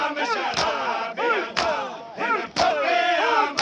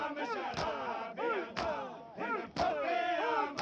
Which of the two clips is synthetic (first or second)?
first